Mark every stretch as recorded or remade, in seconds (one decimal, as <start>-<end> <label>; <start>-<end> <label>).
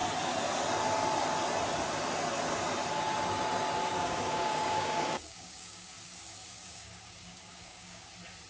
0.0-3.9 recorded; 3.9-8.1 remade; 8.1-8.5 recorded